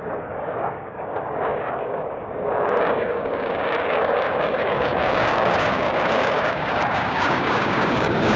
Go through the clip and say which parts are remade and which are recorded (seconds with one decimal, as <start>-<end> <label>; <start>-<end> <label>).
0.0-8.4 remade